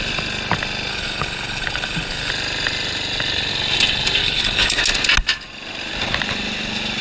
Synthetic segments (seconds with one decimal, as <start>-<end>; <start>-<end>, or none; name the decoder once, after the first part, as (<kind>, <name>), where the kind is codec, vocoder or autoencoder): 0.9-2.3 (codec, HILCodec); 4.2-4.8